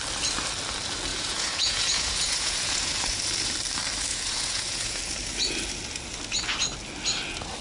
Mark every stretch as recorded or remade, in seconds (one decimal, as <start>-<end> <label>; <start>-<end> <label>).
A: 0.0-1.1 recorded; 1.1-3.2 remade; 3.2-4.1 recorded; 4.1-5.0 remade; 5.0-7.6 recorded